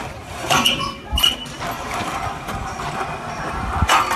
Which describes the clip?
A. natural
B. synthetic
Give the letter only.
B